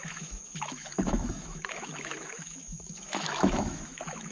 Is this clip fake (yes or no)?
yes